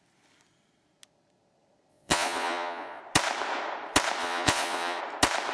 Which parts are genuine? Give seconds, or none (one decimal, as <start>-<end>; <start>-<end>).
0.0-1.9; 3.0-4.2; 5.0-5.5

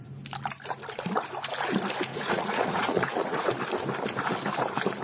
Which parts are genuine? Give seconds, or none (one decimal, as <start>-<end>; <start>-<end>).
0.0-2.1; 3.5-5.0

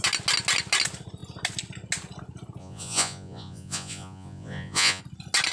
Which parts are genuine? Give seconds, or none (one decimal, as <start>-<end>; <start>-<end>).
0.0-2.6; 5.0-5.5

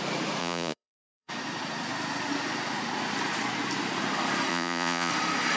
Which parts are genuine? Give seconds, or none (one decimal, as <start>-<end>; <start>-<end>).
0.0-0.4; 1.3-4.5; 5.1-5.6

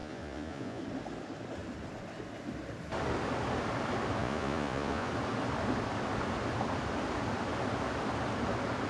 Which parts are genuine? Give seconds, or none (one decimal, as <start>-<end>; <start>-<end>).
0.8-4.2; 5.1-8.9

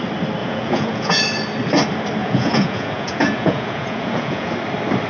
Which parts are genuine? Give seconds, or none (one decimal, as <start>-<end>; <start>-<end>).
0.0-0.4; 1.2-2.2; 4.5-5.1

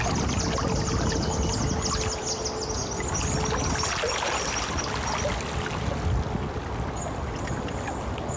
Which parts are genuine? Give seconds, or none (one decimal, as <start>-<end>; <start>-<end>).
0.0-8.4

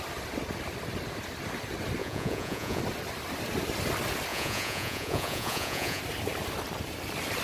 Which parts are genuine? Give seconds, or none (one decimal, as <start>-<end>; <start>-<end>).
0.0-2.0; 2.8-4.3; 6.0-7.4